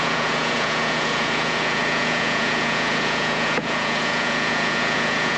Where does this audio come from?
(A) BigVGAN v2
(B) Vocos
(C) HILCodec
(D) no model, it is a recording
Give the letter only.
B